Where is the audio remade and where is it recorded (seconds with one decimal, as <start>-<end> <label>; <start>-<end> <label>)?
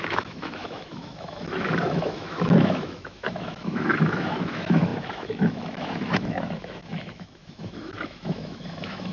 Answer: 0.0-9.1 remade